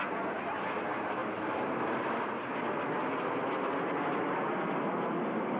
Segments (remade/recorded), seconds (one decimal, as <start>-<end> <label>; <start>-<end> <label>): 0.0-5.6 recorded